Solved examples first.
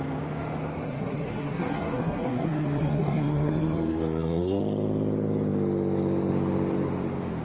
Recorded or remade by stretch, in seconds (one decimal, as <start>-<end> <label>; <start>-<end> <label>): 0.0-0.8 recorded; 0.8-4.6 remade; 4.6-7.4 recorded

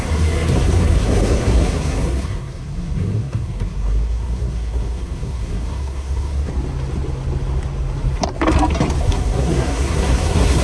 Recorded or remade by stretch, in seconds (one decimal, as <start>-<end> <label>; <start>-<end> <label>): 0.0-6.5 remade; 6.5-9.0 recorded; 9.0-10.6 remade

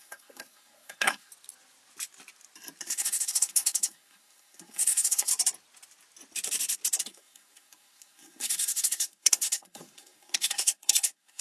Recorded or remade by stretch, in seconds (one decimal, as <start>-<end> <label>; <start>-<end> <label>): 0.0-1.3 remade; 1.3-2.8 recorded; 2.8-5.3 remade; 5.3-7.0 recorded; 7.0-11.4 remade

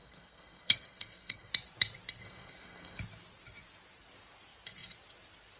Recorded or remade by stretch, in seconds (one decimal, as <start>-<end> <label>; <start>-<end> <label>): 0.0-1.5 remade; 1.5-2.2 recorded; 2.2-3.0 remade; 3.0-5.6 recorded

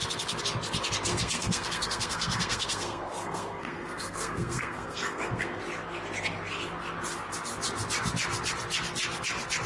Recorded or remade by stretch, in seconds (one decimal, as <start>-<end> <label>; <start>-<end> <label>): 0.0-1.1 recorded; 1.1-5.6 remade; 5.6-9.7 recorded

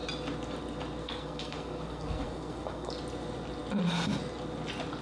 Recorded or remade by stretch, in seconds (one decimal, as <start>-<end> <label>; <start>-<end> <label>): 0.0-1.0 recorded; 1.0-2.9 remade; 2.9-5.0 recorded

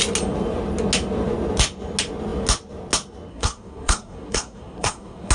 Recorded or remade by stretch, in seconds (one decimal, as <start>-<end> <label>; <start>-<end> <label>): 0.0-3.3 recorded; 3.3-5.3 remade

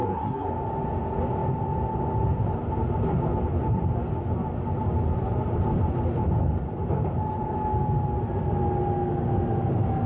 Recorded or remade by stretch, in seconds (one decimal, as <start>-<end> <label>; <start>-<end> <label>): 0.0-0.5 remade; 0.5-10.1 recorded